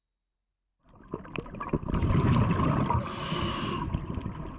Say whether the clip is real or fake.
real